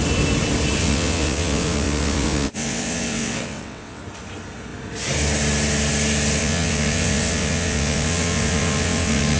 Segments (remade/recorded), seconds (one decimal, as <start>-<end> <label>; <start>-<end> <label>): 0.0-0.8 recorded; 0.8-4.0 remade; 4.0-6.4 recorded; 6.4-9.4 remade